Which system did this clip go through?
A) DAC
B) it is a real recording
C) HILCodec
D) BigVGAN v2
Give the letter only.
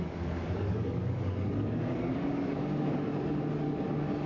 A